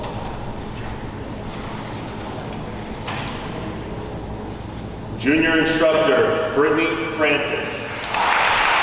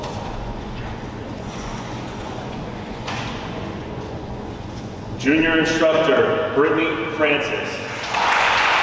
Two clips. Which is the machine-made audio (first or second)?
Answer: second